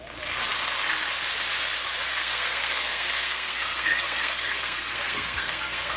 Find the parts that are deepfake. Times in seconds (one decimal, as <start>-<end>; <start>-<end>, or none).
2.1-6.0